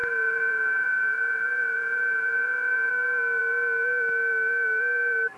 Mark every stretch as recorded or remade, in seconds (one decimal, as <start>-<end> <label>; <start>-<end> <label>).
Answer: 0.0-2.9 remade; 2.9-5.4 recorded